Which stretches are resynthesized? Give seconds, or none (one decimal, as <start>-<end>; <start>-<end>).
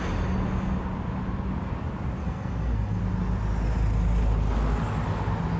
2.2-3.0